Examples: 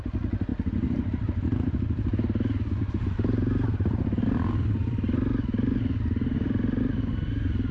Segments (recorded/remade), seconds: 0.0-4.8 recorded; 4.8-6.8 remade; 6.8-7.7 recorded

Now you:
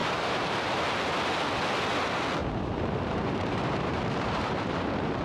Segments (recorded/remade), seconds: 0.0-0.7 remade; 0.7-2.4 recorded; 2.4-5.2 remade

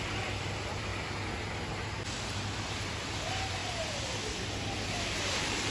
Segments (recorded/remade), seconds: 0.0-0.9 remade; 0.9-2.7 recorded; 2.7-5.7 remade

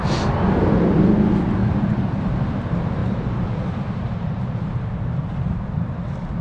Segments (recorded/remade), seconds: 0.0-1.6 recorded; 1.6-2.3 remade; 2.3-3.0 recorded; 3.0-4.8 remade; 4.8-6.4 recorded